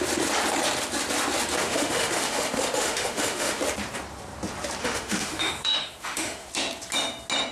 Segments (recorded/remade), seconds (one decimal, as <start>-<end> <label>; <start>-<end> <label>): 0.0-1.6 recorded; 1.6-3.6 remade; 3.6-4.8 recorded; 4.8-6.5 remade; 6.5-7.5 recorded